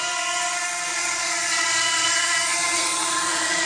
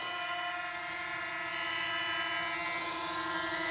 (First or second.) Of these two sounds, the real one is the second